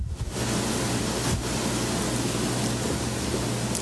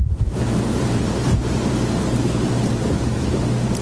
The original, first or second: first